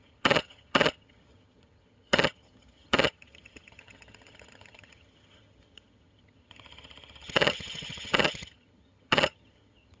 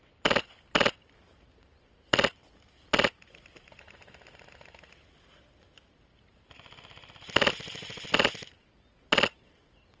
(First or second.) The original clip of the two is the second